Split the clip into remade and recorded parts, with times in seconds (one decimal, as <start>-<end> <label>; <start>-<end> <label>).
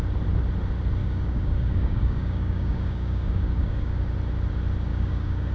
0.0-1.0 recorded; 1.0-4.1 remade; 4.1-4.9 recorded; 4.9-5.5 remade